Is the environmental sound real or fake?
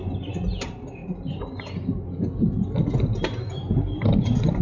real